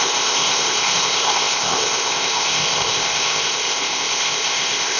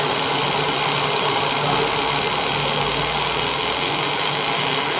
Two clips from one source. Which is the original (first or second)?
second